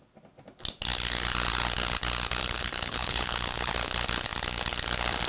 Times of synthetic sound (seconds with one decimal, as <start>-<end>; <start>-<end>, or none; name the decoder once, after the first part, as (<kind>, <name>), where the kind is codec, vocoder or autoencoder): 2.4-3.7 (codec, HILCodec)